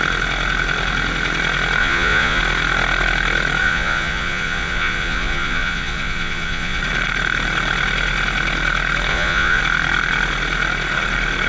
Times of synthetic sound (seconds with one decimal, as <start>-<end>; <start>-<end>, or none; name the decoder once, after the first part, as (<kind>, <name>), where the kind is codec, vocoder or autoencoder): 1.8-2.4 (vocoder, Vocos); 3.6-6.8; 9.1-9.6